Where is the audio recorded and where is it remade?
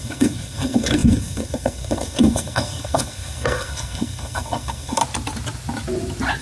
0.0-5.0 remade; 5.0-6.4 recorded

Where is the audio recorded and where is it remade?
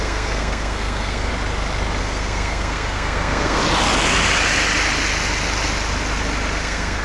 0.0-1.3 remade; 1.3-2.0 recorded; 2.0-3.6 remade; 3.6-6.6 recorded; 6.6-7.0 remade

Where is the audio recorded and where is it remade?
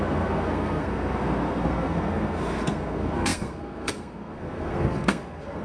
0.0-5.6 remade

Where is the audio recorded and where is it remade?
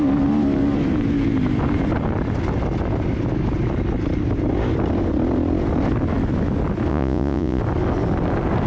0.0-6.9 recorded; 6.9-7.6 remade; 7.6-8.7 recorded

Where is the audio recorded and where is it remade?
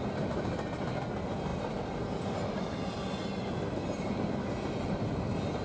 0.0-5.6 recorded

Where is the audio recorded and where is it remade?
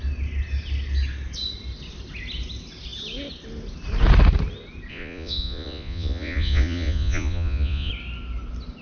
0.0-4.9 recorded; 4.9-7.9 remade; 7.9-8.8 recorded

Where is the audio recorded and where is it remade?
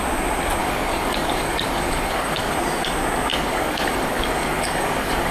0.0-0.6 recorded; 0.6-2.5 remade; 2.5-3.3 recorded; 3.3-5.3 remade